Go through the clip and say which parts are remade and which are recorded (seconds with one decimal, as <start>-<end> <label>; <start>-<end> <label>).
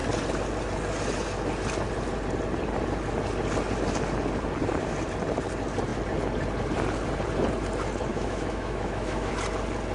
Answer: 0.0-8.1 recorded; 8.1-9.3 remade; 9.3-9.9 recorded